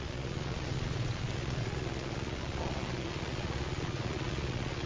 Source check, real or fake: fake